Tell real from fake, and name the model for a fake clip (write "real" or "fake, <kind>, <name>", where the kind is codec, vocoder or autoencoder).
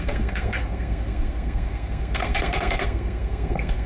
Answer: fake, codec, SNAC